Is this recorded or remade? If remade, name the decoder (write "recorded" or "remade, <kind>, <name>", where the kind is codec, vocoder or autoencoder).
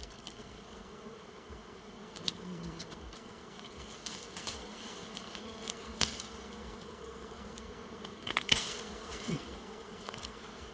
remade, codec, SNAC